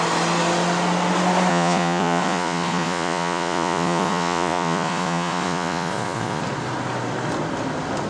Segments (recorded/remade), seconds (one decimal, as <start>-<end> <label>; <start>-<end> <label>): 0.0-1.5 recorded; 1.5-6.4 remade; 6.4-8.1 recorded